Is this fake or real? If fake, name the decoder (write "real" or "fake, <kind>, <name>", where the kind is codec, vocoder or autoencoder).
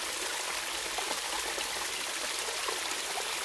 real